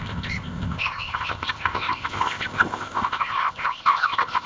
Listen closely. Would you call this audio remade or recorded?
remade